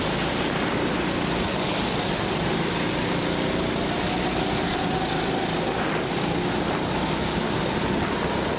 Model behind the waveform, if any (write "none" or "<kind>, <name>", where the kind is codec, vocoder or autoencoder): none